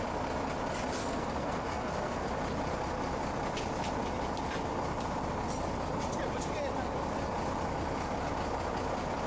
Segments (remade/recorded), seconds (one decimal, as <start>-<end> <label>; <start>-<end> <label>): 0.0-1.0 recorded; 1.0-2.3 remade; 2.3-9.3 recorded